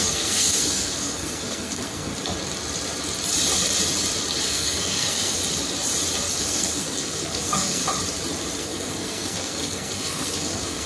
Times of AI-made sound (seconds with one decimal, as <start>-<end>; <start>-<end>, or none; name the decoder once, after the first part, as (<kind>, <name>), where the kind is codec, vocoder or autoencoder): 0.0-2.1 (codec, SNAC); 4.4-5.4; 6.4-7.8; 8.6-10.9